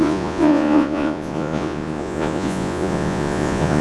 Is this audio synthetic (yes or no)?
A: yes